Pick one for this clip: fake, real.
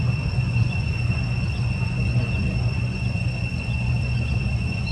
fake